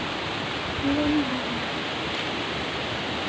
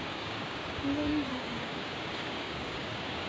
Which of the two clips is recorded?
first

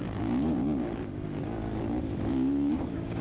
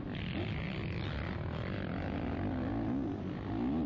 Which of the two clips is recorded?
second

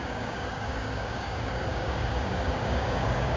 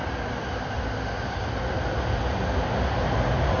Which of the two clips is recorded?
second